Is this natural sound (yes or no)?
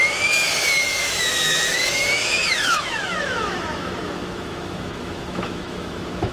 no